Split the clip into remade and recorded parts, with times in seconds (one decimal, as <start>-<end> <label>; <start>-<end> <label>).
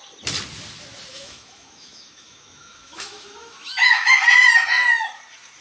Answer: 0.0-1.1 recorded; 1.1-4.2 remade; 4.2-5.6 recorded